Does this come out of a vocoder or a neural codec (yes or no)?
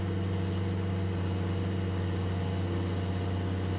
no